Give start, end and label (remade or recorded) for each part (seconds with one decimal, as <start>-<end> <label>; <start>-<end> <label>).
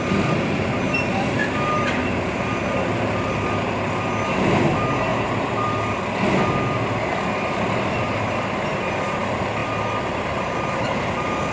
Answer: 0.0-11.5 recorded